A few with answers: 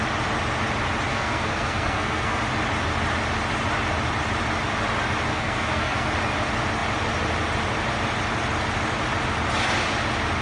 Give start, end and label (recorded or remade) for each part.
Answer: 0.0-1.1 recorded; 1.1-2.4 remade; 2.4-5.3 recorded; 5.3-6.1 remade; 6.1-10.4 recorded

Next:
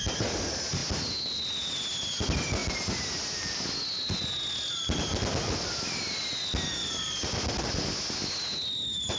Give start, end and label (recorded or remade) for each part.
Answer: 0.0-9.2 recorded

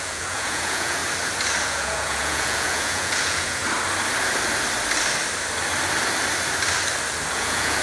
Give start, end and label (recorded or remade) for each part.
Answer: 0.0-1.0 remade; 1.0-1.6 recorded; 1.6-3.6 remade; 3.6-7.3 recorded; 7.3-7.8 remade

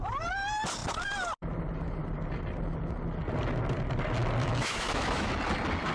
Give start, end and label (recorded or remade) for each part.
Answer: 0.0-4.4 recorded; 4.4-5.3 remade; 5.3-5.9 recorded

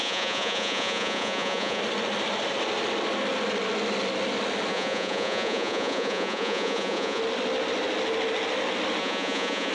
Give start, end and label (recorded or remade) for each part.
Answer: 0.0-1.8 remade; 1.8-4.7 recorded; 4.7-7.2 remade; 7.2-9.0 recorded; 9.0-9.7 remade

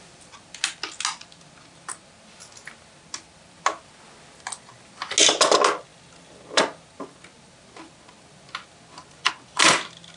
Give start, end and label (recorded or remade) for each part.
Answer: 0.0-10.2 recorded

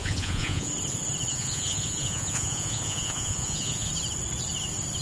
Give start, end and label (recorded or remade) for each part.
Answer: 0.0-0.7 remade; 0.7-1.3 recorded; 1.3-3.9 remade; 3.9-5.0 recorded